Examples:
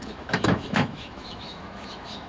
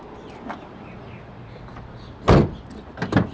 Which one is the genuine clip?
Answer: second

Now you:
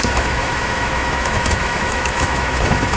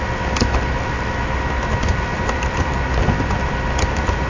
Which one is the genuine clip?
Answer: second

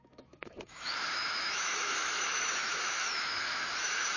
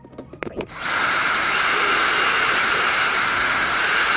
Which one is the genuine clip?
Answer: second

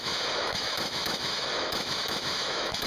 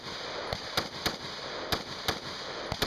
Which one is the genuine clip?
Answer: second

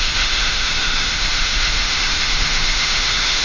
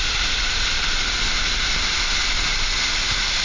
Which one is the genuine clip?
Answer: second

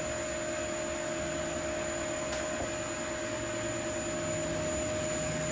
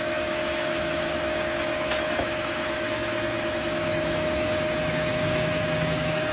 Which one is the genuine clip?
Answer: first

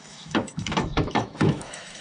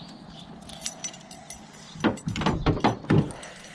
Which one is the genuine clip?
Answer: second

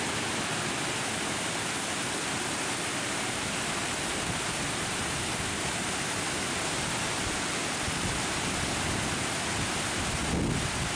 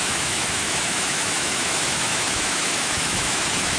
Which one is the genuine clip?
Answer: first